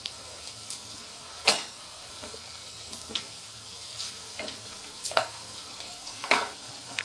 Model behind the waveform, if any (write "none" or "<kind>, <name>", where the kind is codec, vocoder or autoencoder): codec, SNAC